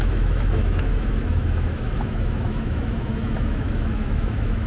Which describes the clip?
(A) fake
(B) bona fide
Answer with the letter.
A